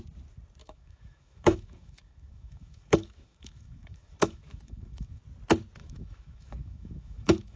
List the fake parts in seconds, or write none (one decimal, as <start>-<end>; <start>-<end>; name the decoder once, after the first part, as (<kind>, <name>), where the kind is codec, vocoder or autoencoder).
0.6-5.2 (autoencoder, DAC-VAE); 5.8-7.6

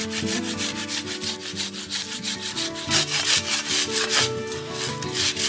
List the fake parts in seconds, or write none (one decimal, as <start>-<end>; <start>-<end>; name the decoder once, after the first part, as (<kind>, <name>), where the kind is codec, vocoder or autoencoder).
none

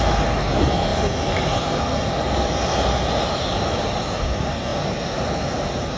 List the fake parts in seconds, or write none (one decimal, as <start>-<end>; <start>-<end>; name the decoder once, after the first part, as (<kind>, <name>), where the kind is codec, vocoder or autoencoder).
none

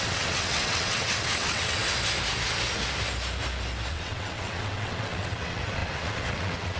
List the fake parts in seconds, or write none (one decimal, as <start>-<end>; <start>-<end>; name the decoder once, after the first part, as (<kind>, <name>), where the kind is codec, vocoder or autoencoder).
0.0-1.8 (vocoder, WaveNeXt); 3.9-6.8

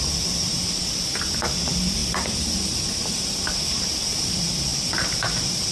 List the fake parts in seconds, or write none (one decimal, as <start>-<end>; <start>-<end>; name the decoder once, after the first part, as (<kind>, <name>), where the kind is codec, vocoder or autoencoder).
0.0-5.7 (vocoder, BigVGAN v2)

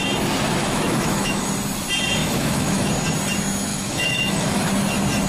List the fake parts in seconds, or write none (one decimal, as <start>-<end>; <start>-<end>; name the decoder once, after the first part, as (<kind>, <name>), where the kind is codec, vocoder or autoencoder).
0.6-1.5 (autoencoder, DAC-VAE); 2.2-2.9; 3.7-4.7

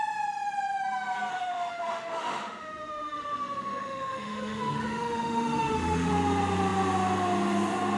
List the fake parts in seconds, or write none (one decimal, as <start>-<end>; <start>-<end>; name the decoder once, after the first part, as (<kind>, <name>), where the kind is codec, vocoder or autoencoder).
1.3-6.1 (autoencoder, DAC-VAE)

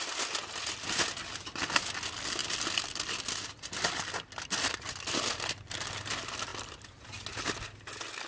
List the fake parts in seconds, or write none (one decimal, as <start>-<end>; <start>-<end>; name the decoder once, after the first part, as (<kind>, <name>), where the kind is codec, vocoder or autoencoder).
none